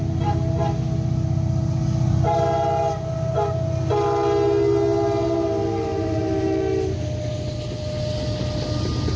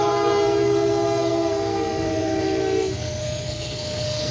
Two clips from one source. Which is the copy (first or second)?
second